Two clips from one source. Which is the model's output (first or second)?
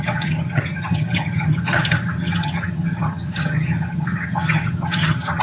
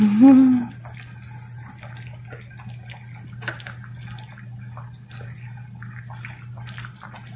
first